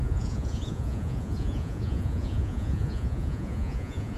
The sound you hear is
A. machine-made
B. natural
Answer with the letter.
A